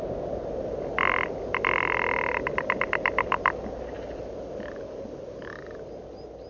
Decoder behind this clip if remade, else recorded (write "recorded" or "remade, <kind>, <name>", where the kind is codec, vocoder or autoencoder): recorded